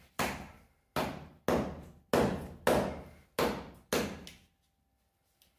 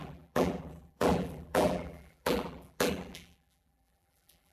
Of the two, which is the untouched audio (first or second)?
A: first